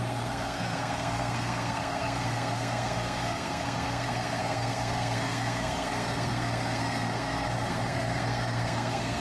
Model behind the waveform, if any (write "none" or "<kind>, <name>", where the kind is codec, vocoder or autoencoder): codec, SNAC